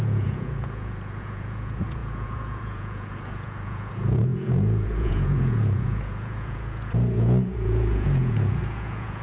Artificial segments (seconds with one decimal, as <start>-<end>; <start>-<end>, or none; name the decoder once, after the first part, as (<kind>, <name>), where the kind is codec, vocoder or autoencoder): 0.0-9.2 (vocoder, Vocos)